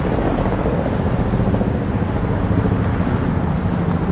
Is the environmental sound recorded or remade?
recorded